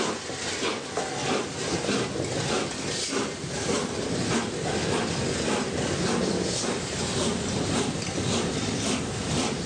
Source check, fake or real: real